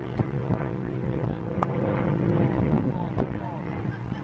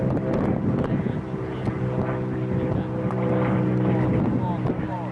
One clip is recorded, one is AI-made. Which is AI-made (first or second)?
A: first